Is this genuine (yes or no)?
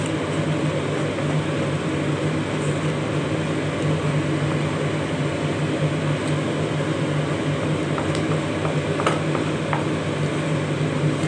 yes